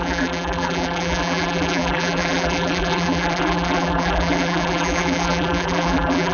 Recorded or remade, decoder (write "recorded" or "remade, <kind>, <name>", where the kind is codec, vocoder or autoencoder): remade, vocoder, BigVGAN v2